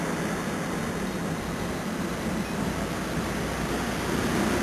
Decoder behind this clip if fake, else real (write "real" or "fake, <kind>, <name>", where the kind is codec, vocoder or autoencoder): real